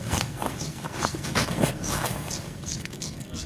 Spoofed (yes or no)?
yes